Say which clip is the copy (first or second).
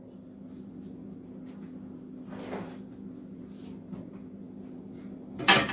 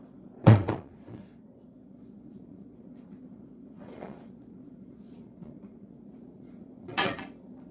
second